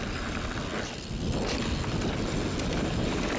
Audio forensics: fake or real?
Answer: real